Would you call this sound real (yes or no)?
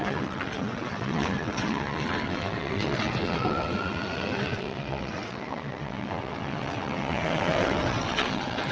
no